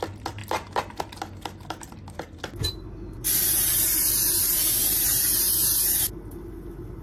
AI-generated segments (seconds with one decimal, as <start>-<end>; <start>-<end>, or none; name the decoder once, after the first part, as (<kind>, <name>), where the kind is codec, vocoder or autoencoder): none